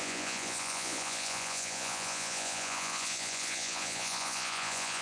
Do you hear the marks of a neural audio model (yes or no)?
yes